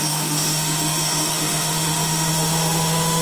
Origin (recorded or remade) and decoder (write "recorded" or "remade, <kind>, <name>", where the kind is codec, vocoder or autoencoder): remade, autoencoder, DAC-VAE